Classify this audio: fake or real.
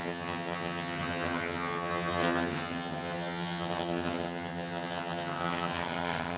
fake